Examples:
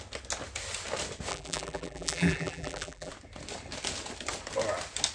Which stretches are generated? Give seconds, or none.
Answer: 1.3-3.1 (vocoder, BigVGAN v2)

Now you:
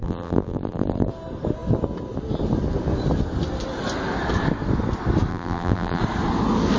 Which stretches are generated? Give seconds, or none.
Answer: 0.0-1.1 (vocoder, BigVGAN v2); 5.3-6.0